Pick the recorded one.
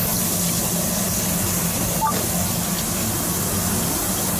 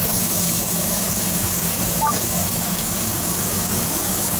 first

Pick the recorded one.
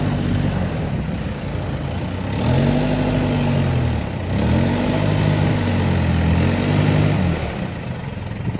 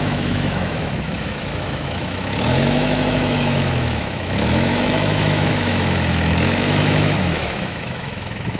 first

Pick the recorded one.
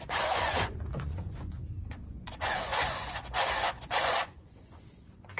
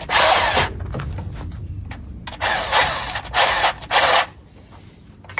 second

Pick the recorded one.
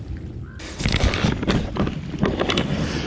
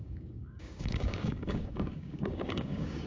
first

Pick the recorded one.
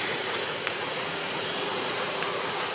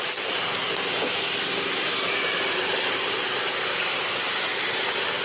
second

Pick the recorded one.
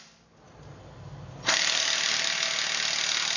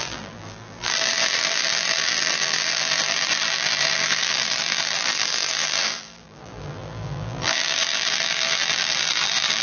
first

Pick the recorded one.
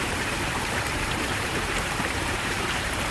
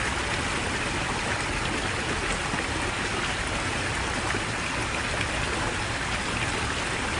second